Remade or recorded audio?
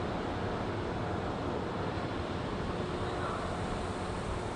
recorded